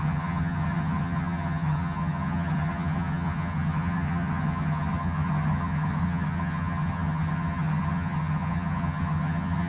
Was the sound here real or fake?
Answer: fake